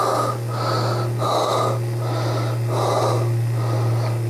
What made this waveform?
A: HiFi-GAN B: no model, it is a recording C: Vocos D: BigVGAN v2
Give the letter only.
B